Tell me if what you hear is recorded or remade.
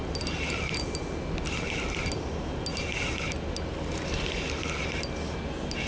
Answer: recorded